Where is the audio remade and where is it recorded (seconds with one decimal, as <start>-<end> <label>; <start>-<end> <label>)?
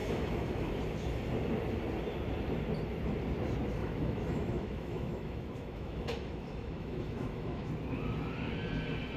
0.0-0.8 remade; 0.8-3.8 recorded; 3.8-7.7 remade; 7.7-9.2 recorded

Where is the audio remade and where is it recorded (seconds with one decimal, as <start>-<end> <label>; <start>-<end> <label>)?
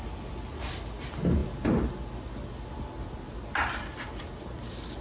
0.0-5.0 recorded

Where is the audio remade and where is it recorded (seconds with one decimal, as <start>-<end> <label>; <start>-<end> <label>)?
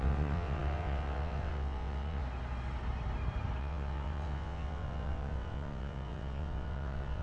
0.0-2.2 remade; 2.2-3.6 recorded; 3.6-7.2 remade